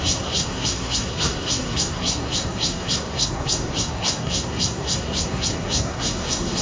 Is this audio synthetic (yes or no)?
yes